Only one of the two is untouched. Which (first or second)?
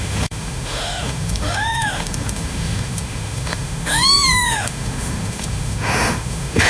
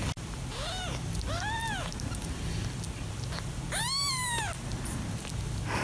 second